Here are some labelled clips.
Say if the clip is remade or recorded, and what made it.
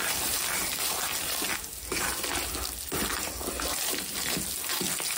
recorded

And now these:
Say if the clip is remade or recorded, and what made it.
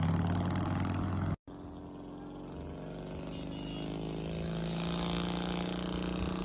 recorded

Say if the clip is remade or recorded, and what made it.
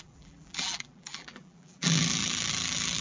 remade, vocoder, BigVGAN v2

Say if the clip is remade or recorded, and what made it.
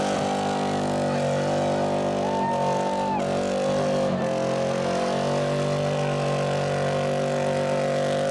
recorded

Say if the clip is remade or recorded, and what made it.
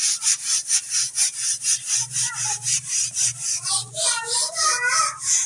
remade, vocoder, BigVGAN v2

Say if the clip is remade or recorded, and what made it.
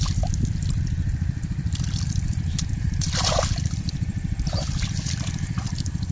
remade, vocoder, BigVGAN v2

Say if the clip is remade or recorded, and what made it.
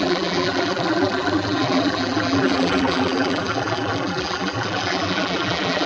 remade, vocoder, BigVGAN v2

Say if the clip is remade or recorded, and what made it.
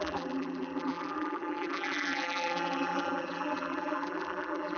remade, vocoder, BigVGAN v2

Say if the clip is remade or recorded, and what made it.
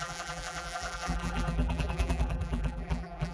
remade, vocoder, BigVGAN v2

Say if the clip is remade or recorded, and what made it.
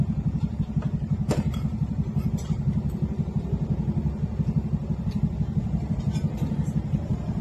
remade, vocoder, BigVGAN v2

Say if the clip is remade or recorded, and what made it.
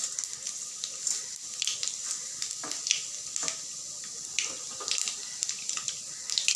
recorded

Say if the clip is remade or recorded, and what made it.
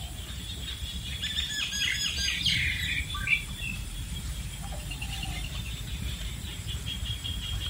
remade, vocoder, BigVGAN v2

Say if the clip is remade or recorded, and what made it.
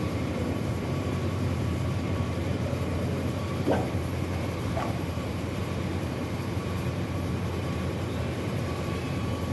remade, vocoder, BigVGAN v2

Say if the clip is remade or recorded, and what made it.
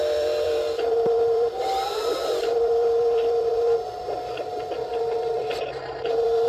remade, vocoder, BigVGAN v2